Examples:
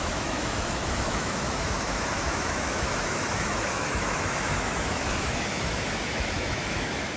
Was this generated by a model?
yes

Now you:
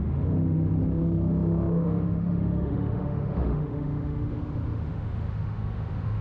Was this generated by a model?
yes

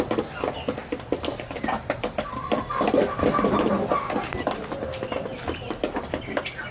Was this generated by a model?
no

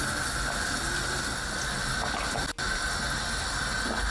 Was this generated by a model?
no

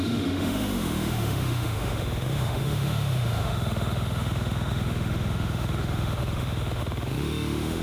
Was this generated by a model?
yes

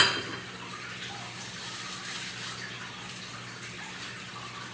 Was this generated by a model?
no